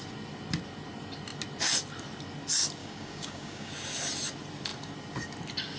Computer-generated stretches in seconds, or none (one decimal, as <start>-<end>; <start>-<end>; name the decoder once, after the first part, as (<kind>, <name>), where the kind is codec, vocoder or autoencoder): 2.8-3.7 (codec, DAC)